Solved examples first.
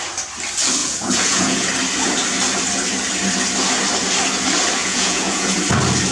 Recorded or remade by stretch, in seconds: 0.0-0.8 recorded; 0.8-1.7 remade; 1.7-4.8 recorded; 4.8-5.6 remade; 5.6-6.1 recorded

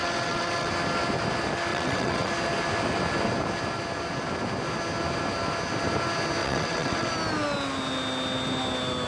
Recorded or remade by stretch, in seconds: 0.0-0.7 remade; 0.7-1.7 recorded; 1.7-2.3 remade; 2.3-6.4 recorded; 6.4-7.1 remade; 7.1-9.1 recorded

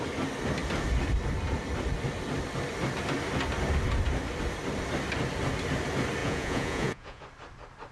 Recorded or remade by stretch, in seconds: 0.0-6.2 recorded; 6.2-7.2 remade; 7.2-7.9 recorded

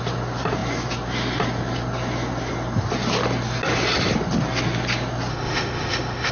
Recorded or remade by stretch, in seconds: 0.0-5.3 recorded; 5.3-6.3 remade

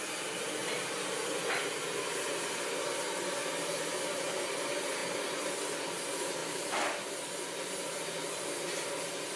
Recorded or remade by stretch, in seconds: 0.0-3.4 recorded; 3.4-4.4 remade; 4.4-6.4 recorded; 6.4-8.9 remade; 8.9-9.4 recorded

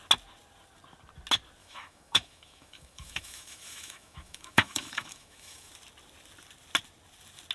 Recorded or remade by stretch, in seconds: 0.0-1.6 recorded; 1.6-5.7 remade; 5.7-7.5 recorded

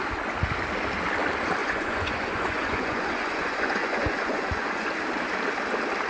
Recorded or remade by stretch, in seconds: 0.0-1.6 recorded; 1.6-4.9 remade; 4.9-6.1 recorded